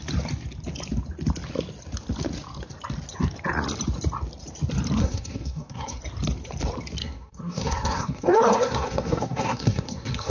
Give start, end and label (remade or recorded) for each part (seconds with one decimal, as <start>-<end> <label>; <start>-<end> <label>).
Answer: 0.0-5.0 recorded; 5.0-6.0 remade; 6.0-7.0 recorded; 7.0-10.3 remade